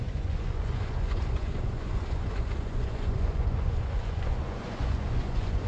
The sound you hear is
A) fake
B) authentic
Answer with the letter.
A